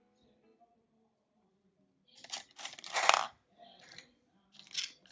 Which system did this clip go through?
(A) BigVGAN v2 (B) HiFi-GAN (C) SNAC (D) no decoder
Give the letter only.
A